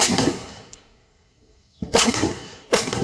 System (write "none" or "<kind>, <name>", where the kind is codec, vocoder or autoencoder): codec, SNAC